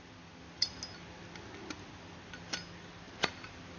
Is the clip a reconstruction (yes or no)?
no